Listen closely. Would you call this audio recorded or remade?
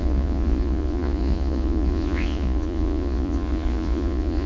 remade